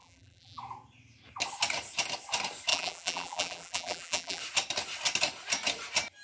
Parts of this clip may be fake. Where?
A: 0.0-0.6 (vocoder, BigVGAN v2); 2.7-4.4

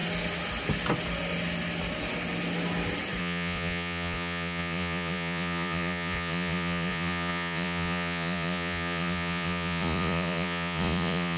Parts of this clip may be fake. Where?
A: 3.2-11.4 (vocoder, Vocos)

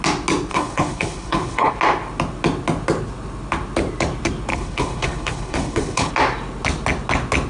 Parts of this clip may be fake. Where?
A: 0.5-1.7 (codec, HILCodec); 4.5-6.1

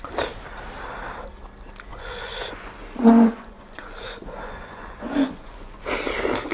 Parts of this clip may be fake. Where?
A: 1.9-5.8 (vocoder, Vocos)

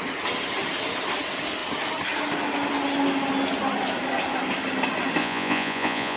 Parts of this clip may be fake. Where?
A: 5.2-6.2 (vocoder, Vocos)

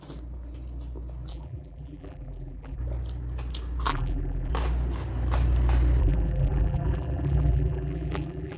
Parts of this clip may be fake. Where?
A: 1.3-2.8 (vocoder, BigVGAN v2); 3.9-4.5; 6.0-8.6